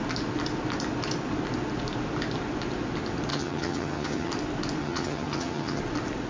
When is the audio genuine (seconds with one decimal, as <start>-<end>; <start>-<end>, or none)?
0.0-3.3; 4.3-4.8; 5.8-6.3